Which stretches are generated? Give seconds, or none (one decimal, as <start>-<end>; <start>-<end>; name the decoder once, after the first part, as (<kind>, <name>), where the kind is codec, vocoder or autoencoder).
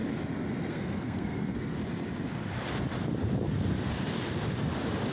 0.7-1.8 (codec, SNAC)